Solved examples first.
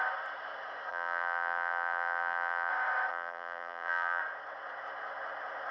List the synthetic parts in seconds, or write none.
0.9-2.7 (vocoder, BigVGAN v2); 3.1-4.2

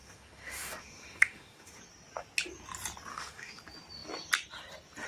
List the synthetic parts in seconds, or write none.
0.0-1.8 (autoencoder, DAC-VAE); 3.1-3.6

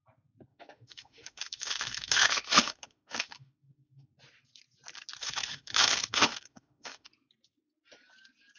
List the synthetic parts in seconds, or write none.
0.5-4.1 (autoencoder, DAC-VAE); 5.2-7.1

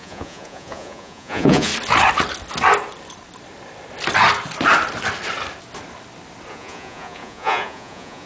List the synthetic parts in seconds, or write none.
0.0-1.7 (vocoder, Vocos); 6.5-8.3

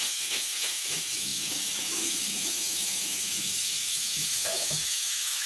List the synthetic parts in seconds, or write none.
0.0-5.5 (autoencoder, DAC-VAE)

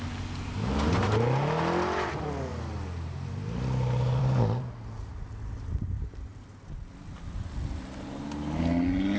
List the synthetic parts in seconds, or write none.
none